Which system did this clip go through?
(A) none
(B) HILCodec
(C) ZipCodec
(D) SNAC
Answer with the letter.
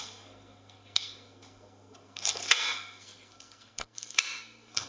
D